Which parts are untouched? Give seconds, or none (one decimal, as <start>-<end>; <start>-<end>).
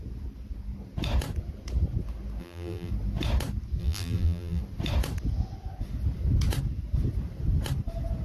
0.0-2.4; 2.9-3.8; 4.6-8.2